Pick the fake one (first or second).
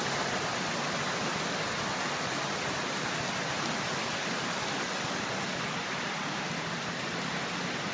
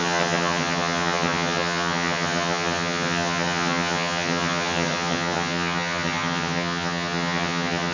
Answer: second